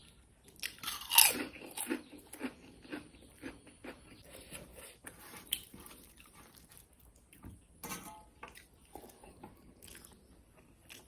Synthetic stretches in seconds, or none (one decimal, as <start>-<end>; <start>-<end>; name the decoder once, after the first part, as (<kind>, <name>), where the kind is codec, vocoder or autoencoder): 4.7-6.1 (vocoder, BigVGAN v2)

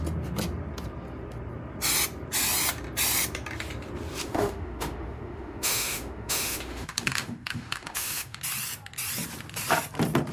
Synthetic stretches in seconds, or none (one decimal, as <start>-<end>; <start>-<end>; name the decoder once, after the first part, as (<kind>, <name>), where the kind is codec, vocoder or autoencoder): 4.2-8.4 (autoencoder, DAC-VAE)

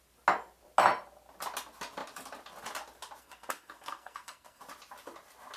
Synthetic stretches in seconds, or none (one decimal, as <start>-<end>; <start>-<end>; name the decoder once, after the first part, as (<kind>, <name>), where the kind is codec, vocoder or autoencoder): 3.2-4.6 (codec, SNAC)

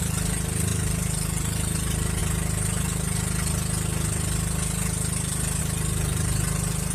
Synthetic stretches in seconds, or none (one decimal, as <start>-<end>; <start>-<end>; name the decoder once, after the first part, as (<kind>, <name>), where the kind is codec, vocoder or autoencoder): 0.0-2.2 (vocoder, BigVGAN v2); 5.6-6.9

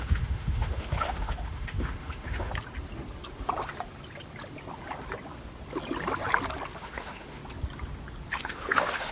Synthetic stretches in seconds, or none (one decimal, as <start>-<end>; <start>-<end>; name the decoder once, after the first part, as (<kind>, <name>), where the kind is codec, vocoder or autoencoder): 0.0-2.5 (autoencoder, DAC-VAE); 6.8-7.4; 8.3-9.1